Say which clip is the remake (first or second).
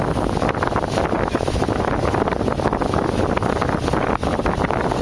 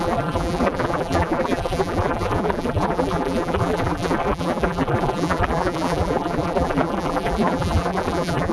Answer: second